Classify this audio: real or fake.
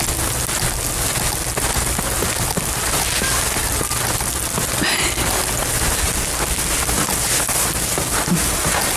real